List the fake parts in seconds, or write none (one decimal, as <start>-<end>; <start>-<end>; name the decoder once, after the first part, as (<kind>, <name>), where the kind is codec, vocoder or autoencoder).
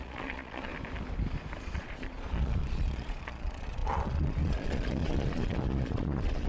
0.0-0.7 (vocoder, Vocos); 1.6-6.5